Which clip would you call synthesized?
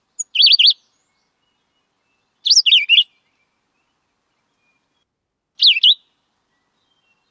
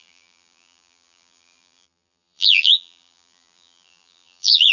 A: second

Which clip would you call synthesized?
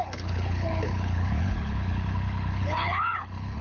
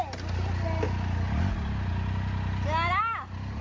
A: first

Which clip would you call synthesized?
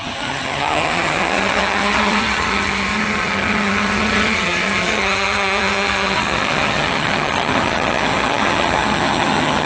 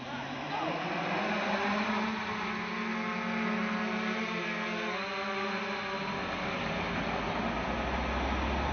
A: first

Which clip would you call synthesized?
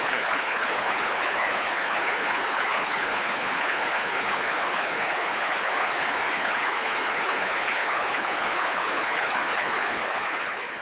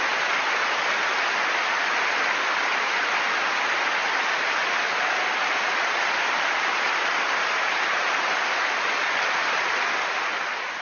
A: first